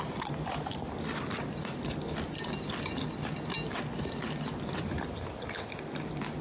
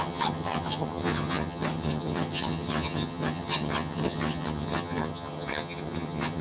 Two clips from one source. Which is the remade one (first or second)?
second